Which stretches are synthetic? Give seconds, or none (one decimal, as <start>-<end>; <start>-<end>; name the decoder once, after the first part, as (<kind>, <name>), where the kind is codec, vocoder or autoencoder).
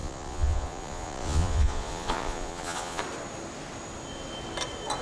0.0-3.0 (vocoder, Vocos)